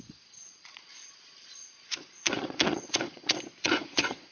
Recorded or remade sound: remade